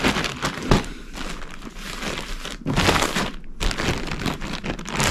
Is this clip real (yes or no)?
yes